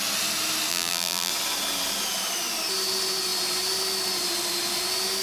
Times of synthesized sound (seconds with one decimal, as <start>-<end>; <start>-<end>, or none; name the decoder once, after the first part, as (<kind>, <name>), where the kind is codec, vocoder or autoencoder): 0.7-1.3 (vocoder, BigVGAN v2)